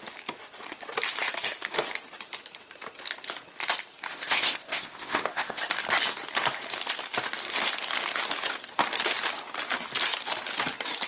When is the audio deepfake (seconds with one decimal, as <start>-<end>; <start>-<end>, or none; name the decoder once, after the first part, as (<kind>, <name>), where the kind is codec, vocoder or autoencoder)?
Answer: 4.1-5.6 (codec, ZipCodec)